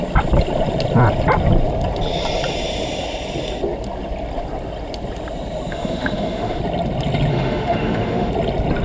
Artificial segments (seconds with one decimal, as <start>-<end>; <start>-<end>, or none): 5.7-6.6; 7.3-8.3